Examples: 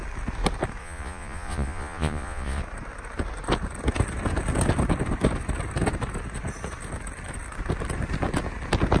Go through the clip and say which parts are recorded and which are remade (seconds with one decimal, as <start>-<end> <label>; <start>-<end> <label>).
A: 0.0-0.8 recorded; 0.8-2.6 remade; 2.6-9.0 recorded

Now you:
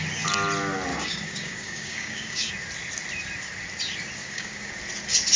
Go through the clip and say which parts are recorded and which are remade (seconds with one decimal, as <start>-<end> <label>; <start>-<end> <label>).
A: 0.0-0.9 recorded; 0.9-2.5 remade; 2.5-4.2 recorded; 4.2-4.7 remade; 4.7-5.4 recorded

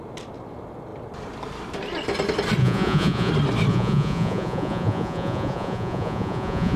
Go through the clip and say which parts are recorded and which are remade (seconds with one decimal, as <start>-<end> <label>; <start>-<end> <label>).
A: 0.0-2.6 recorded; 2.6-3.3 remade; 3.3-3.7 recorded; 3.7-6.8 remade